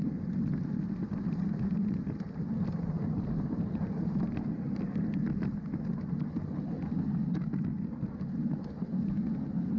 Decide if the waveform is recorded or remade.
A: recorded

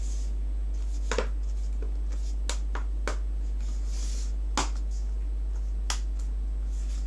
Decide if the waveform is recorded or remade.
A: recorded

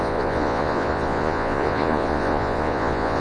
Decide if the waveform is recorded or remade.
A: remade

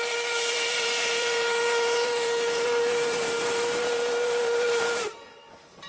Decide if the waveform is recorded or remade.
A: remade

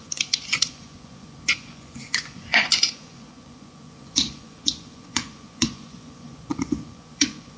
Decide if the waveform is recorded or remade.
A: remade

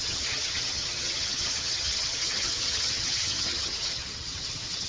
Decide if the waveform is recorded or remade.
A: remade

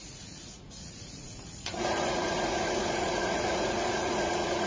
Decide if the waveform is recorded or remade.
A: remade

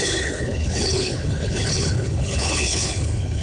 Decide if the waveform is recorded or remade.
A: remade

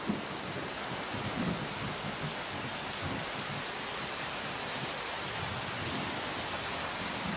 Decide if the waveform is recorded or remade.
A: recorded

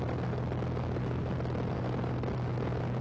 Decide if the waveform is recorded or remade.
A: recorded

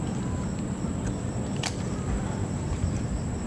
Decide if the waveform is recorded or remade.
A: remade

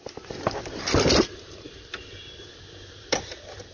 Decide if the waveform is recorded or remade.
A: recorded